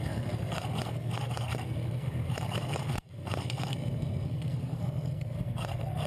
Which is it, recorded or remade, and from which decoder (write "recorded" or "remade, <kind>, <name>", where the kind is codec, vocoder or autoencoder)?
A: remade, codec, SNAC